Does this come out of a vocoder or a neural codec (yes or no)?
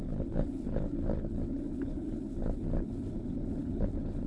yes